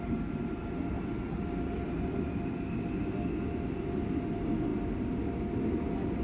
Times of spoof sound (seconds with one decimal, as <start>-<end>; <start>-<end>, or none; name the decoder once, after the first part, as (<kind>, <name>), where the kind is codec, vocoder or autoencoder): none